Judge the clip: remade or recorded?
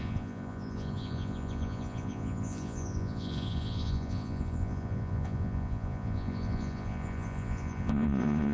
remade